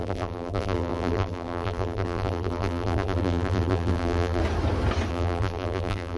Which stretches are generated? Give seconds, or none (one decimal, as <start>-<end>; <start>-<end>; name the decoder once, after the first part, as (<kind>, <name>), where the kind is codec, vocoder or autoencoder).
0.0-4.4 (vocoder, BigVGAN v2); 5.1-6.2